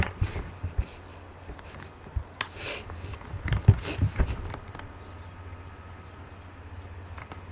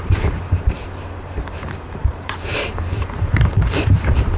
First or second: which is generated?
second